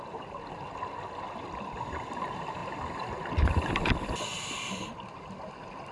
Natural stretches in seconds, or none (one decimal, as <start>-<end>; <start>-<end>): 0.0-5.9